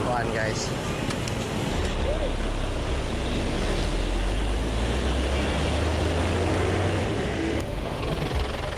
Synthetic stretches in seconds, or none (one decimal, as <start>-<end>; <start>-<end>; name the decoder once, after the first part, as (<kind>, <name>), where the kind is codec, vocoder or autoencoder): 7.0-8.0 (autoencoder, DAC-VAE)